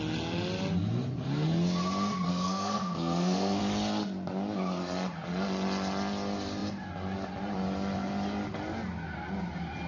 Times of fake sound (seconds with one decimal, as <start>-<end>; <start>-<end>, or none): 2.3-3.6

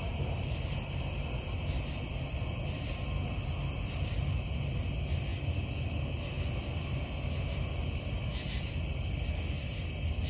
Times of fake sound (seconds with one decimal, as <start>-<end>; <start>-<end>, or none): none

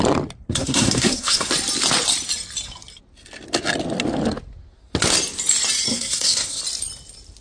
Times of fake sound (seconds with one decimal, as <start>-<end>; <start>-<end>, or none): 0.5-1.5; 5.9-6.6

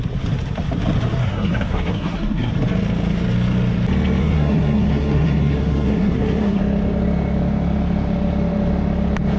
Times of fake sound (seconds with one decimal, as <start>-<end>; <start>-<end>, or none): 1.2-2.5; 4.2-6.6

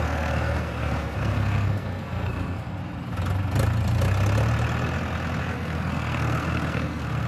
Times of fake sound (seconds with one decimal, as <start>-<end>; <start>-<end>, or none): 0.0-2.8; 5.4-7.3

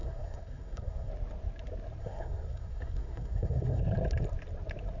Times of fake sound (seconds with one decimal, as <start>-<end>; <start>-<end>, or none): 0.0-1.1; 2.0-3.8

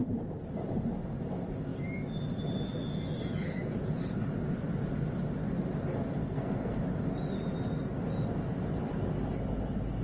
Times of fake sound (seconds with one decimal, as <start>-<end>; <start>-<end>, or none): 6.2-6.8